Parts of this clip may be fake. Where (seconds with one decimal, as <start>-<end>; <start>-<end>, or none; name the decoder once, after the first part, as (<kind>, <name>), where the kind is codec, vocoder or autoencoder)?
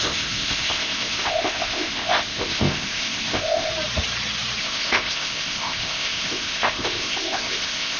0.0-3.7 (codec, ZipCodec); 4.6-8.0